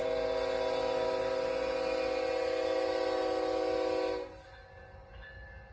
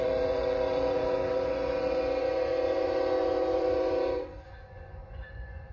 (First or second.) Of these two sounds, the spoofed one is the second